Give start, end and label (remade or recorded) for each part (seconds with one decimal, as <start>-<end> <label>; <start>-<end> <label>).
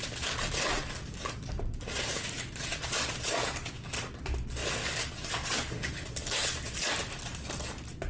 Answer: 0.0-4.6 remade; 4.6-5.3 recorded; 5.3-8.1 remade